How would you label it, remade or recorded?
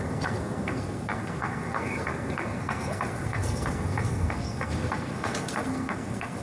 remade